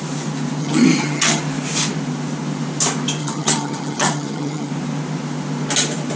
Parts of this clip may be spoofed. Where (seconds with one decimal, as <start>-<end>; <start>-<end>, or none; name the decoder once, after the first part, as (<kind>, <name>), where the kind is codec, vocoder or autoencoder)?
0.6-1.4 (vocoder, HiFi-GAN); 3.2-4.7